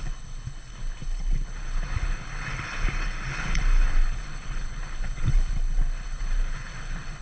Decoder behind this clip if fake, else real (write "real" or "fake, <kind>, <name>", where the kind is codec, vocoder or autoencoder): fake, codec, HILCodec